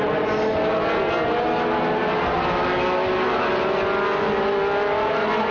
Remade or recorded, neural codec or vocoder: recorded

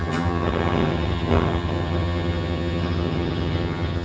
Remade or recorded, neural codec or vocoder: remade, vocoder, HiFi-GAN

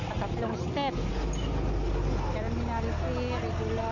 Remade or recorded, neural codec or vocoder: recorded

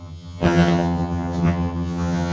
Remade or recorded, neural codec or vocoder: remade, vocoder, HiFi-GAN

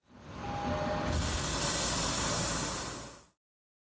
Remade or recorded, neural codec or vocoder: recorded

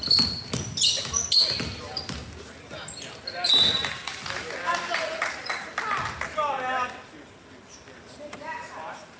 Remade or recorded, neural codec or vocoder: recorded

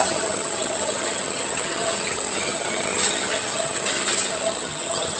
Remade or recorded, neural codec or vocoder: remade, vocoder, HiFi-GAN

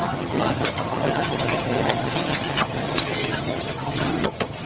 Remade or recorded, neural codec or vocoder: remade, vocoder, HiFi-GAN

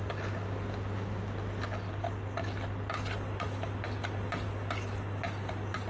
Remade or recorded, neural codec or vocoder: recorded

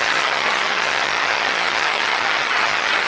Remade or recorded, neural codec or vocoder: remade, vocoder, HiFi-GAN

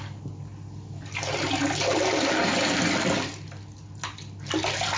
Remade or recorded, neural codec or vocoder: recorded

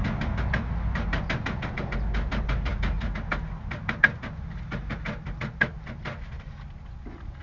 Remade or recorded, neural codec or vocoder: recorded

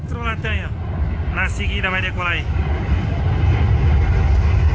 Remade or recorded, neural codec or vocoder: recorded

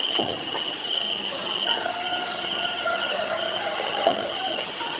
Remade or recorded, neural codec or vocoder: remade, vocoder, HiFi-GAN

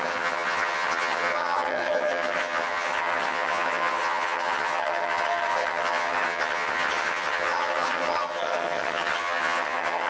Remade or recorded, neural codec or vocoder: remade, vocoder, HiFi-GAN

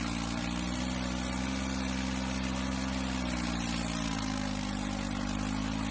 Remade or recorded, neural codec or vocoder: recorded